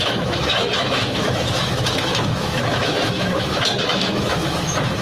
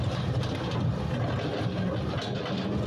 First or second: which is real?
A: second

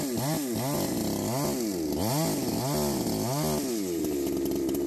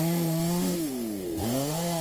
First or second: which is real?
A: first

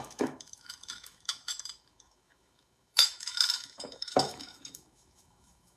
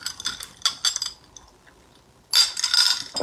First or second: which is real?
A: second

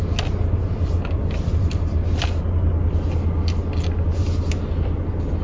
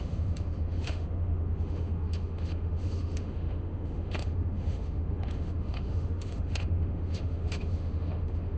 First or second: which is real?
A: first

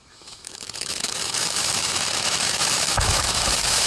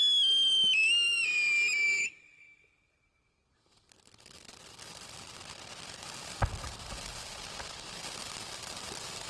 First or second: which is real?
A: second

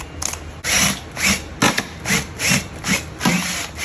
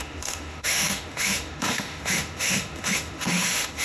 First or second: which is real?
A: first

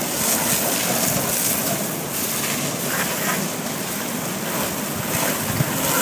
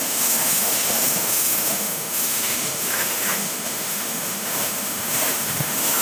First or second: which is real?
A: first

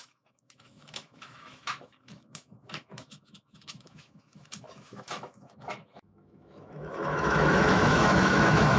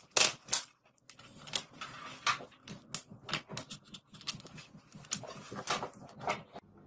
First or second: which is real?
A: second